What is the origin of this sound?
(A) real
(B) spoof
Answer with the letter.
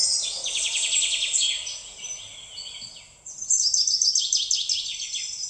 A